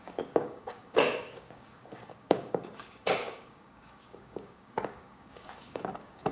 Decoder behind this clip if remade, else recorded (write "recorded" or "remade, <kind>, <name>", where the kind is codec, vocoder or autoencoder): remade, codec, DAC